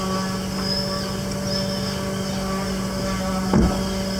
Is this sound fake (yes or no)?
no